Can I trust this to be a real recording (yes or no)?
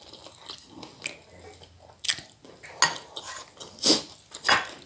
yes